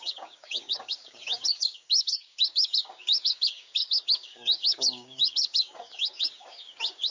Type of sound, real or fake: fake